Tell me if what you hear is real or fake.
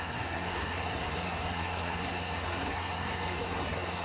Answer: fake